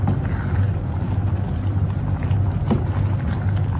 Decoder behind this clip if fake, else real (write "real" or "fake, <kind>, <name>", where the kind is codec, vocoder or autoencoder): real